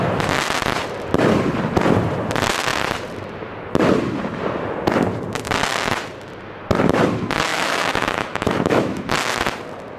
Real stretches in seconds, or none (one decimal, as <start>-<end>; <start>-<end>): 0.0-7.5; 9.1-10.0